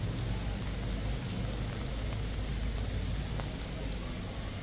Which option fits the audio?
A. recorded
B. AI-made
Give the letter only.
A